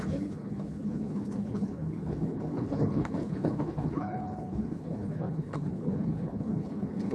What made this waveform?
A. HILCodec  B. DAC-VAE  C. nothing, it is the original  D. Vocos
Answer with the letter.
A